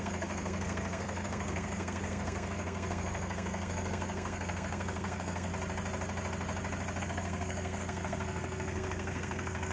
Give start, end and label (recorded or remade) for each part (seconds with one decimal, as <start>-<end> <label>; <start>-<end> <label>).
0.0-5.5 remade; 5.5-7.0 recorded; 7.0-9.7 remade